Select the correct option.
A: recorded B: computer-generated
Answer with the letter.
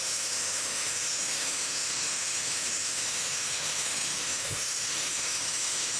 B